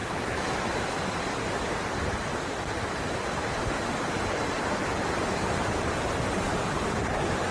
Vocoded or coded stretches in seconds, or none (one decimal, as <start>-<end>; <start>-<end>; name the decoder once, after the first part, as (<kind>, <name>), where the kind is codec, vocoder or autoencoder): none